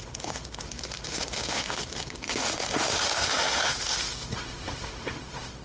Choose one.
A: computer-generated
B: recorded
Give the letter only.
A